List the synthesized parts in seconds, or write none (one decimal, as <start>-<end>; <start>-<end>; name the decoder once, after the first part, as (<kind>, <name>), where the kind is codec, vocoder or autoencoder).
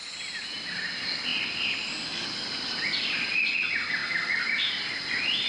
none